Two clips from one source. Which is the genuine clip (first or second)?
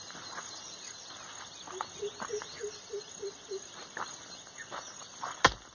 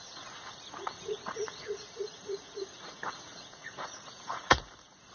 first